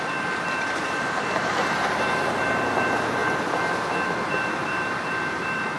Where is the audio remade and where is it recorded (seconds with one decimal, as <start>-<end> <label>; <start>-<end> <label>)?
0.0-3.2 remade; 3.2-4.3 recorded; 4.3-5.8 remade